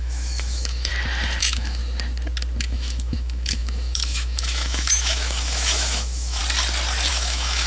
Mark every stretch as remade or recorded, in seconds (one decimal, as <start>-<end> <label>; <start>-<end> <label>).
0.0-0.9 remade; 0.9-1.4 recorded; 1.4-1.8 remade; 1.8-2.6 recorded; 2.6-6.4 remade; 6.4-7.1 recorded; 7.1-7.7 remade